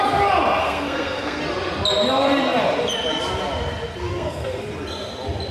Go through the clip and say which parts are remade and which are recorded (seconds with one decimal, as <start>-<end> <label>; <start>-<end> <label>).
0.0-0.6 recorded; 0.6-1.4 remade; 1.4-4.1 recorded; 4.1-4.6 remade; 4.6-5.5 recorded